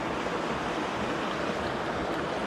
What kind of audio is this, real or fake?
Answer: fake